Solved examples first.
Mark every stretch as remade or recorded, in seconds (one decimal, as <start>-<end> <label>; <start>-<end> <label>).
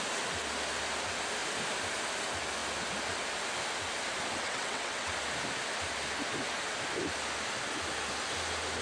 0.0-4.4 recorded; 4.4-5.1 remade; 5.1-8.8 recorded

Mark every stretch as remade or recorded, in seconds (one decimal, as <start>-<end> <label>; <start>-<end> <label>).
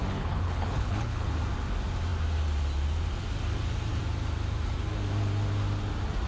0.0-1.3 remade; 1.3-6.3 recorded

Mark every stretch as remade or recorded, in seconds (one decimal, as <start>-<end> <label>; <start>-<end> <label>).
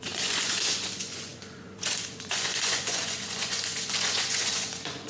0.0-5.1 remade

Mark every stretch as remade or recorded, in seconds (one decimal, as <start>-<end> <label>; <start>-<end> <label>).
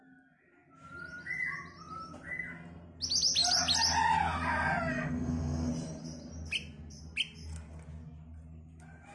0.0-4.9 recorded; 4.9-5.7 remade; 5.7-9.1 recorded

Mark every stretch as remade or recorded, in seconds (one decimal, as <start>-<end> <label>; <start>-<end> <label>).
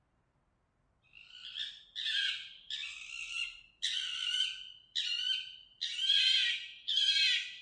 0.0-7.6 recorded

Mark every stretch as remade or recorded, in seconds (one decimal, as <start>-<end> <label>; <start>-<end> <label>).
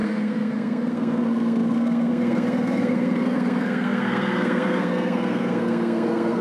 0.0-6.4 remade